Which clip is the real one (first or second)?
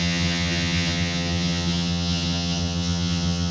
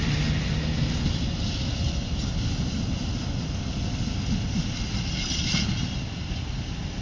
second